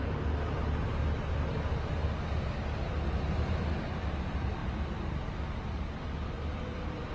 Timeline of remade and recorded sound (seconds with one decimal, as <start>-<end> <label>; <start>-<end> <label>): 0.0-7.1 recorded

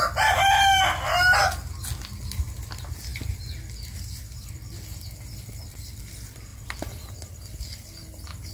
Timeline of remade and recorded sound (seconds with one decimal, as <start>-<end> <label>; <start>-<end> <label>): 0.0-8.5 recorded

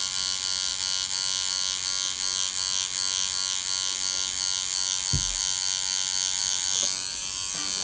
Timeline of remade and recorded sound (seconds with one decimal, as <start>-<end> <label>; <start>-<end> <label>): 0.0-6.4 recorded; 6.4-7.2 remade; 7.2-7.8 recorded